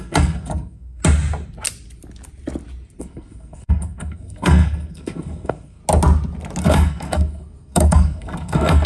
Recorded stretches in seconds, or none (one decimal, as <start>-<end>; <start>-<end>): 1.0-3.0; 5.8-6.6